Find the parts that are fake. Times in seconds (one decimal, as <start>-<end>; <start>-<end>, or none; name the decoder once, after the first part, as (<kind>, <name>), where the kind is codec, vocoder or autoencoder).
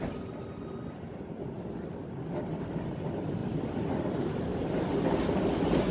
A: none